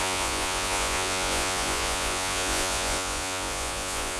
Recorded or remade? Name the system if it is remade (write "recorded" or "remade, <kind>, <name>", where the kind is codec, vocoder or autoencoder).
remade, vocoder, Vocos